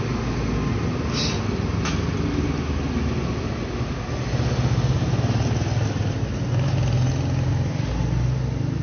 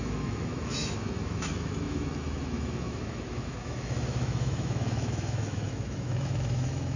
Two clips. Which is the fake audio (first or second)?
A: second